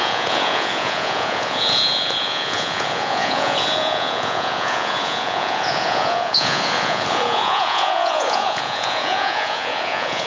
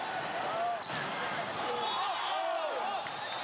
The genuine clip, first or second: second